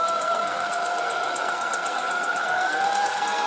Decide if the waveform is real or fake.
fake